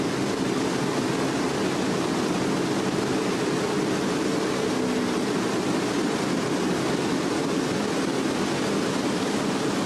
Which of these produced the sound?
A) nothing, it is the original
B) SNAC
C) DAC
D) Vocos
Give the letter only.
A